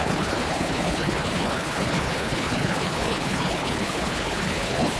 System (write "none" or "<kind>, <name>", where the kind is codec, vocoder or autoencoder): codec, HILCodec